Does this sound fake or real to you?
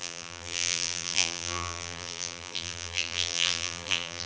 fake